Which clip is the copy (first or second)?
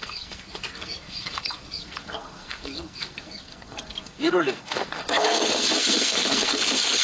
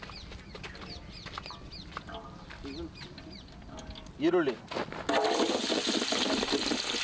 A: first